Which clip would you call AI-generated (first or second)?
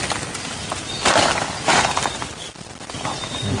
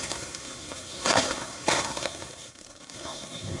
second